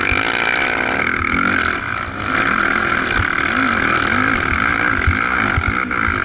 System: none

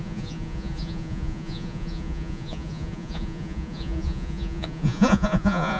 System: vocoder, Vocos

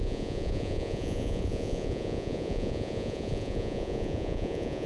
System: vocoder, Vocos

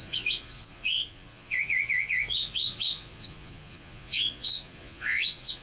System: vocoder, Vocos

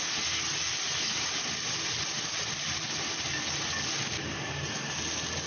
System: none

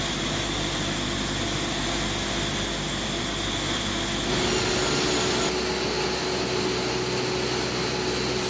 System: none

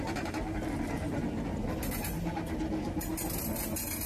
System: none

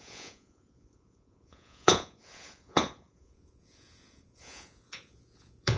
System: vocoder, Vocos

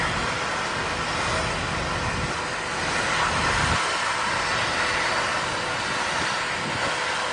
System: none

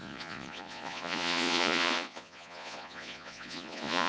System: vocoder, Vocos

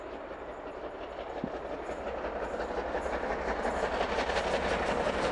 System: none